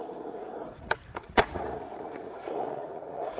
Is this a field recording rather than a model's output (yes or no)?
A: no